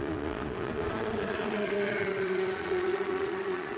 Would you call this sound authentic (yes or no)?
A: no